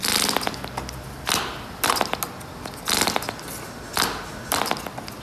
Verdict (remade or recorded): recorded